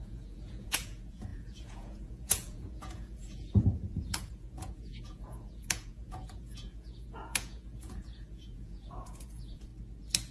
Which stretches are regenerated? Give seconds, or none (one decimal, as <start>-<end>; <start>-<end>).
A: 0.0-9.7